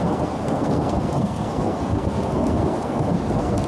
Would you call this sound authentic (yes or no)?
no